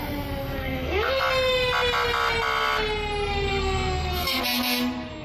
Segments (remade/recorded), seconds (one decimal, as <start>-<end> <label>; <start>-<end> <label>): 0.0-0.4 recorded; 0.4-1.2 remade; 1.2-3.5 recorded; 3.5-4.4 remade; 4.4-5.2 recorded